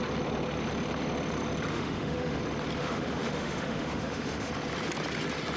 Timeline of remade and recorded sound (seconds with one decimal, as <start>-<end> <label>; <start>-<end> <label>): 0.0-1.7 recorded; 1.7-2.4 remade; 2.4-2.8 recorded; 2.8-4.5 remade; 4.5-5.6 recorded